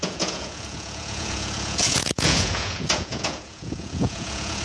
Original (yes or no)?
no